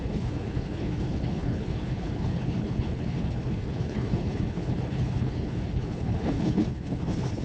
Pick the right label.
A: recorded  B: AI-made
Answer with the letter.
B